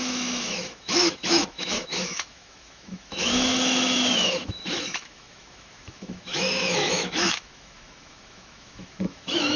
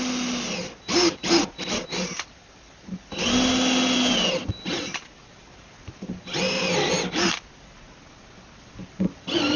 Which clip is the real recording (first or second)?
second